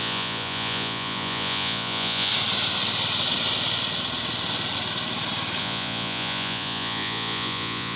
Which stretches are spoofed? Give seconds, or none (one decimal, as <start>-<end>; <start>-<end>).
0.0-2.3; 5.6-8.0